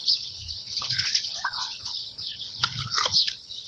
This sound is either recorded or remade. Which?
remade